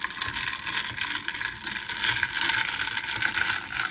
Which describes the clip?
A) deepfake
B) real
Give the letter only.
B